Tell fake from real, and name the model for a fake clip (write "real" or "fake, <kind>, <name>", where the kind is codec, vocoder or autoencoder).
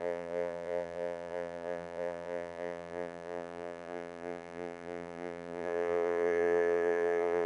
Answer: fake, vocoder, BigVGAN v2